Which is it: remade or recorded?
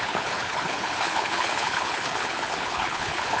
remade